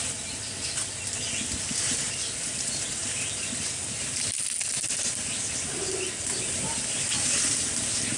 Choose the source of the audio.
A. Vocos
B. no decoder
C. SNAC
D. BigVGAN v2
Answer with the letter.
B